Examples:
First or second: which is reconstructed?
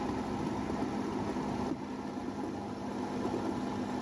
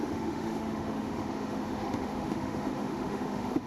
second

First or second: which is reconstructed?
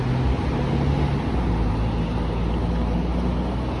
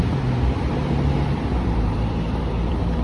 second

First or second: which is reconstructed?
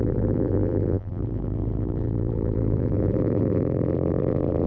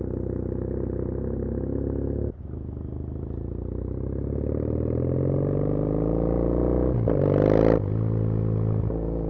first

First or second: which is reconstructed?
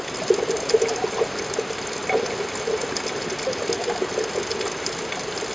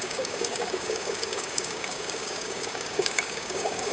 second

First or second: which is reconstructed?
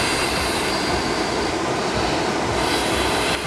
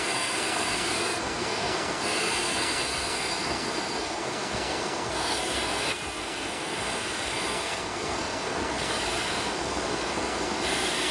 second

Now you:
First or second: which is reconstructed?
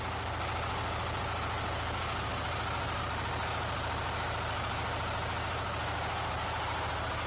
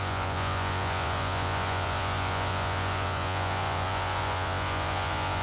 second